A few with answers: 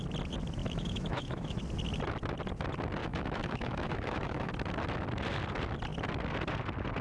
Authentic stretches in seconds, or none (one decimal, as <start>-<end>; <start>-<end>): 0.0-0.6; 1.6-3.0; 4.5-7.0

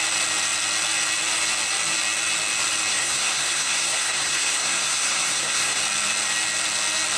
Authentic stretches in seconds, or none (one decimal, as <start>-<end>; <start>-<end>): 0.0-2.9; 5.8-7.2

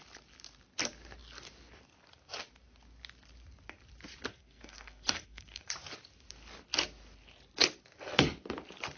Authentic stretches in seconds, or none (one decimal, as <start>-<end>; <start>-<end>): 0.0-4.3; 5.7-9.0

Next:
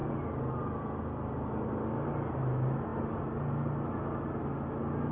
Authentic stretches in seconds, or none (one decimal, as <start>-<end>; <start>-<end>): 0.0-5.1

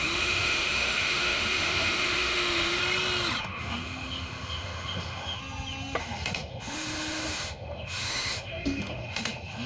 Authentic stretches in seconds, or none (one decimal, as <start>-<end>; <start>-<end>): 2.8-3.4; 5.4-6.0

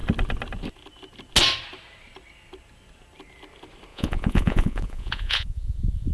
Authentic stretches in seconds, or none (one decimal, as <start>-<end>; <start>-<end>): 0.0-3.9

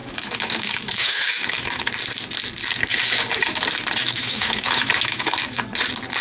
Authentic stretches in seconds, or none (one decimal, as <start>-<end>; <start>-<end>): 1.9-4.0; 5.6-6.2

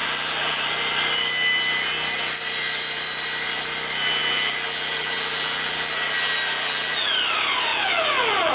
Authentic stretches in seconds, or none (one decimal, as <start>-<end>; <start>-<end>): 0.6-4.2; 7.1-7.7